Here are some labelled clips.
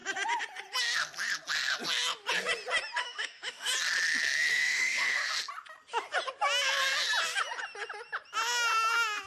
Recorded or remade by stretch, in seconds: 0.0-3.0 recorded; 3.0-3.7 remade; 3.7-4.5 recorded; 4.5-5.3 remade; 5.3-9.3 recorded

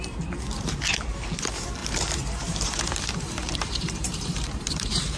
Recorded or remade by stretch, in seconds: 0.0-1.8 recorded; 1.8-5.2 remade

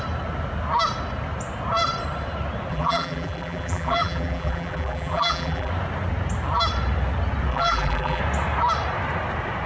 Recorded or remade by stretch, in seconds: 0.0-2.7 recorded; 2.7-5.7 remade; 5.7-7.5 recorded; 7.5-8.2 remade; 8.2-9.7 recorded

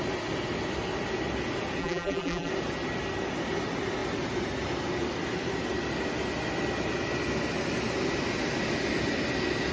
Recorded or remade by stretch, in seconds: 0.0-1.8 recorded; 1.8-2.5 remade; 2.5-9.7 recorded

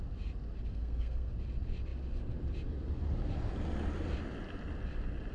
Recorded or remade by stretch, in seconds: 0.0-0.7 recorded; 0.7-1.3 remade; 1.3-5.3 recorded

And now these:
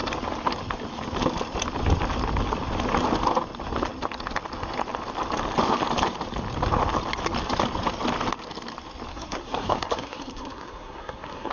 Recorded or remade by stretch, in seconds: 0.0-9.1 recorded; 9.1-11.5 remade

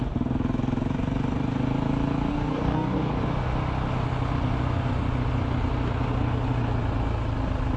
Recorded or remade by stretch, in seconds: 0.0-2.3 recorded; 2.3-3.1 remade; 3.1-7.8 recorded

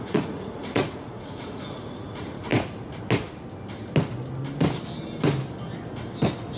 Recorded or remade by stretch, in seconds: 0.0-2.5 remade; 2.5-6.6 recorded